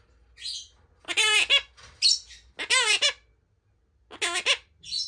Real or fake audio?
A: real